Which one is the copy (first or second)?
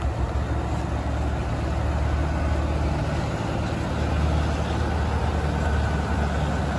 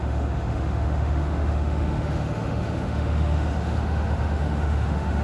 second